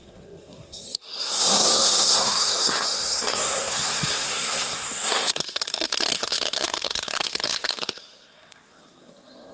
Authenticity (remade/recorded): remade